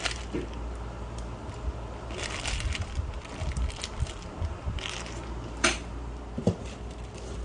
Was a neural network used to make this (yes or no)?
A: no